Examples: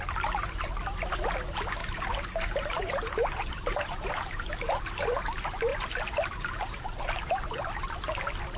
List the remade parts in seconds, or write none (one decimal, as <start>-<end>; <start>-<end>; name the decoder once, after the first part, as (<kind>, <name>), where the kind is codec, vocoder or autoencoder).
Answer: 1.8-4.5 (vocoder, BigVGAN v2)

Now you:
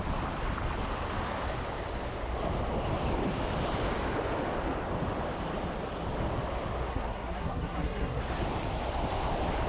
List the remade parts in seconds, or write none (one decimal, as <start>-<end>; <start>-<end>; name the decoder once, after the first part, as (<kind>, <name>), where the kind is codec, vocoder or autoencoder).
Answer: 6.9-8.2 (codec, SNAC)

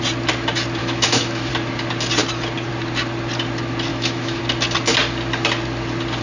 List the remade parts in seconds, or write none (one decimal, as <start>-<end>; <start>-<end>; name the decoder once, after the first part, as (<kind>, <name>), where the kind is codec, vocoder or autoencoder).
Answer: 0.8-1.5 (autoencoder, DAC-VAE); 3.9-4.4

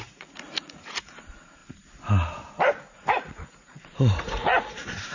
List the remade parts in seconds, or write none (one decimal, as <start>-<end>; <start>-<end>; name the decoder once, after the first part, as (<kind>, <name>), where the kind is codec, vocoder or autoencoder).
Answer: 0.0-1.6 (vocoder, Vocos); 2.9-5.1